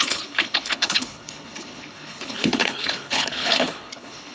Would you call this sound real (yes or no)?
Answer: no